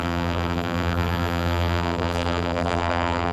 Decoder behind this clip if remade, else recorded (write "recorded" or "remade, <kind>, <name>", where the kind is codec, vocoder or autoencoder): remade, vocoder, BigVGAN v2